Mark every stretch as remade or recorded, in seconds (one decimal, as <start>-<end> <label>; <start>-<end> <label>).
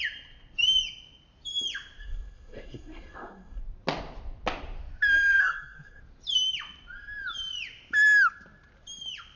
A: 0.0-2.0 recorded; 2.0-3.6 remade; 3.6-5.4 recorded; 5.4-6.0 remade; 6.0-9.4 recorded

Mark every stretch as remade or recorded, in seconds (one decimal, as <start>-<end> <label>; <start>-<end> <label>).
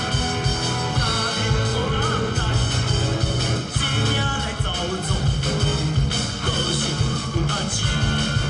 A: 0.0-1.7 recorded; 1.7-3.8 remade; 3.8-6.1 recorded; 6.1-7.3 remade; 7.3-8.5 recorded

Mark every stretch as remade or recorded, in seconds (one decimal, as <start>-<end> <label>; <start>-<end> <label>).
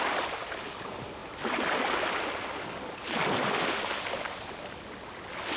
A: 0.0-5.6 recorded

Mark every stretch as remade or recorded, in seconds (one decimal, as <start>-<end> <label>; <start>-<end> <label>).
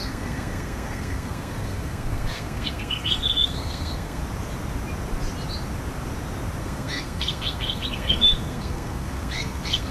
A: 0.0-4.2 remade; 4.2-6.6 recorded; 6.6-9.9 remade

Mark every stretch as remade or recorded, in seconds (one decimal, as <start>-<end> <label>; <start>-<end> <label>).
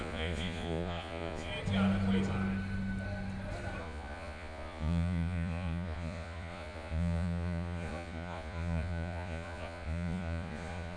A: 0.0-1.5 remade; 1.5-3.8 recorded; 3.8-11.0 remade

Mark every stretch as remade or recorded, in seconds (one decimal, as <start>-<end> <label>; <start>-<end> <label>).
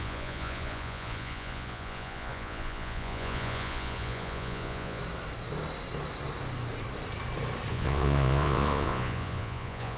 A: 0.0-5.0 remade; 5.0-7.7 recorded; 7.7-10.0 remade